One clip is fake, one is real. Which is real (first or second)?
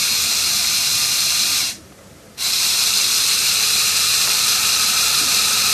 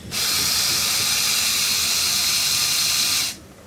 second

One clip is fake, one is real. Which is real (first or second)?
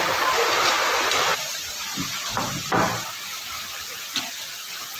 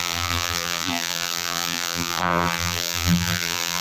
first